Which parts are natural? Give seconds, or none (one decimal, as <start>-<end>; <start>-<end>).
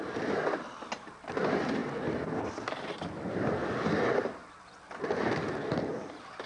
0.0-6.5